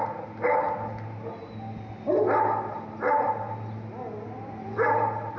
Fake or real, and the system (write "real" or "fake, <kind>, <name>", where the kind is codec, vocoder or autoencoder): real